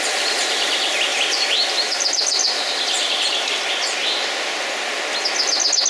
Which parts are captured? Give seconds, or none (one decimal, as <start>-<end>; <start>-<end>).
0.0-1.1; 4.6-5.9